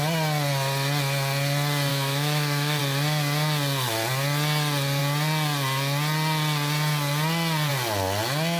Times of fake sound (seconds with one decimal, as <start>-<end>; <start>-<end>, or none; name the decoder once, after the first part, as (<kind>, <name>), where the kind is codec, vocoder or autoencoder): 1.9-2.8 (autoencoder, DAC-VAE)

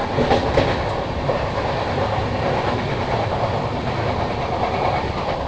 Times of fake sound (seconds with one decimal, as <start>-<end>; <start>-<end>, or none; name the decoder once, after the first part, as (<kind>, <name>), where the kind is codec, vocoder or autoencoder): none

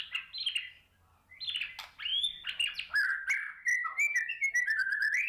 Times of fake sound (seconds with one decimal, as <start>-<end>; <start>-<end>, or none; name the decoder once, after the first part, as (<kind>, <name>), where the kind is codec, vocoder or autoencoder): none